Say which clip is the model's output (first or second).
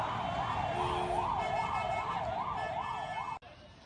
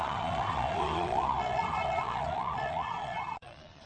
second